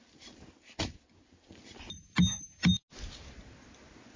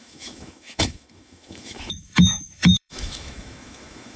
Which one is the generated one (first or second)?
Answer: second